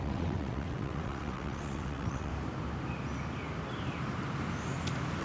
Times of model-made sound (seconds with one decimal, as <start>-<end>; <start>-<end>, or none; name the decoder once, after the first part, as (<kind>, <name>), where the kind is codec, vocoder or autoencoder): 0.0-2.3 (vocoder, WaveNeXt)